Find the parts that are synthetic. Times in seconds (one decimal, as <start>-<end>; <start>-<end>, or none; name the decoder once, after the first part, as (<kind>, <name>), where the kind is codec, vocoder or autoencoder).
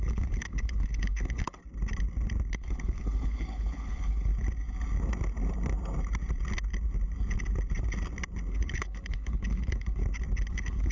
0.0-1.6 (codec, HILCodec); 2.5-4.3; 8.5-10.0; 10.5-10.9